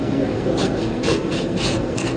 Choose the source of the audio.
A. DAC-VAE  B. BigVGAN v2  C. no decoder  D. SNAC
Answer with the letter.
D